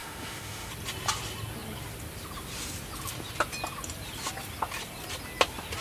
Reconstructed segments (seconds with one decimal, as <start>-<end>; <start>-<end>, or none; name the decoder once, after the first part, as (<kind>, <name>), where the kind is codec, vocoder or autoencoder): 0.0-0.7 (autoencoder, DAC-VAE)